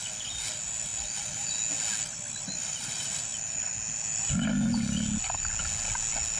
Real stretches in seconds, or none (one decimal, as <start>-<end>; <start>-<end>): 0.0-6.4